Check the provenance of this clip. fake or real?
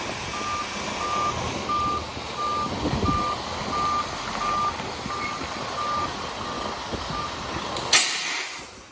real